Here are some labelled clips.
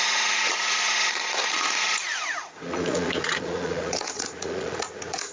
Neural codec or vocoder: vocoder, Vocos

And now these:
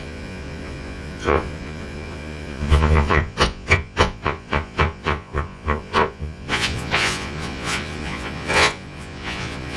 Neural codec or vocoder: vocoder, Vocos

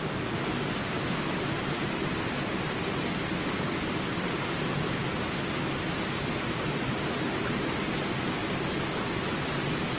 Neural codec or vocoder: none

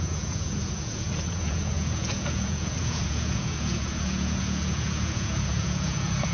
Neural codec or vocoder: vocoder, Vocos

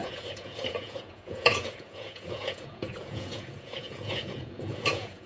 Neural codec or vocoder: vocoder, Vocos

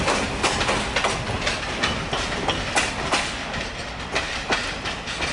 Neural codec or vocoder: none